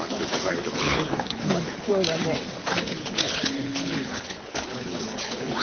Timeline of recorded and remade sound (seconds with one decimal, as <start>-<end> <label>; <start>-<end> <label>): 0.0-1.9 remade; 1.9-2.6 recorded; 2.6-5.6 remade